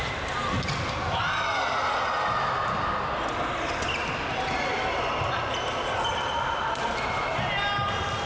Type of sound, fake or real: real